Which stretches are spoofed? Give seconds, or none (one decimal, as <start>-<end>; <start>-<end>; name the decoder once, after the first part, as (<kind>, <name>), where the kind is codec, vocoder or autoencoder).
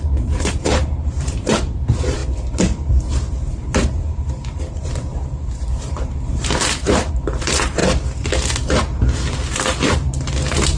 0.0-7.8 (vocoder, BigVGAN v2); 9.9-10.8